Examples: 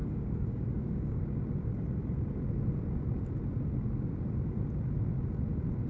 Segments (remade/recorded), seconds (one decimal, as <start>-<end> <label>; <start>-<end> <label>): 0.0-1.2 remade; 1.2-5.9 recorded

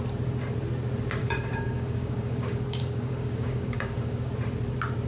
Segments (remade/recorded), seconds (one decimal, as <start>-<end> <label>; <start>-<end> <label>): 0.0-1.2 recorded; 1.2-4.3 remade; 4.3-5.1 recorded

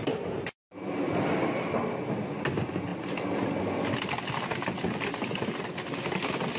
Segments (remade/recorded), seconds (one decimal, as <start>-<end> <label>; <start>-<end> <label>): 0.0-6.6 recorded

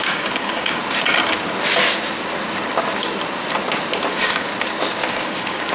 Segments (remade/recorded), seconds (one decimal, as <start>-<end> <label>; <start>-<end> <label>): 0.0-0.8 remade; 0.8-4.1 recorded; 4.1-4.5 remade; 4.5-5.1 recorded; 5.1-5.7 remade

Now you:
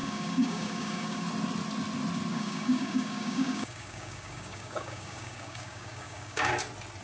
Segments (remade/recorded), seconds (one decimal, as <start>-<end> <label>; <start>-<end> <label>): 0.0-1.3 remade; 1.3-2.3 recorded; 2.3-6.5 remade; 6.5-7.0 recorded

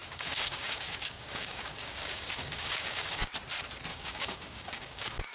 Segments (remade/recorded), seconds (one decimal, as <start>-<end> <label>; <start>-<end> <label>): 0.0-3.2 remade; 3.2-3.9 recorded; 3.9-5.3 remade

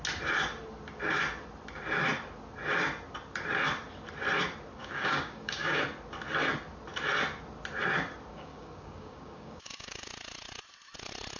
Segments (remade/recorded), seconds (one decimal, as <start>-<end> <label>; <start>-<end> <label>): 0.0-4.8 recorded; 4.8-5.8 remade; 5.8-8.3 recorded; 8.3-10.1 remade; 10.1-11.4 recorded

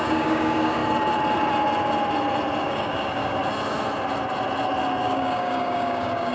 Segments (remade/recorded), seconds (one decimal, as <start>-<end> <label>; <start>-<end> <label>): 0.0-0.8 remade; 0.8-2.6 recorded; 2.6-3.4 remade; 3.4-5.0 recorded; 5.0-6.3 remade